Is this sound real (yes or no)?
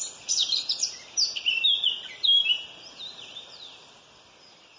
no